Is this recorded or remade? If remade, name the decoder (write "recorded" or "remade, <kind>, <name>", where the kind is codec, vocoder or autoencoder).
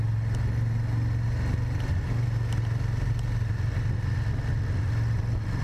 recorded